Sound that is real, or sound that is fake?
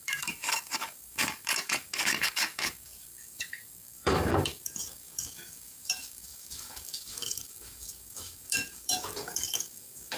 fake